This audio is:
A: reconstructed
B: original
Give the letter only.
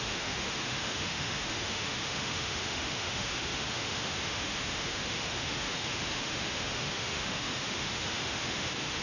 A